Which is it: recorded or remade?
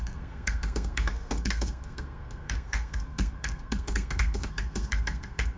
remade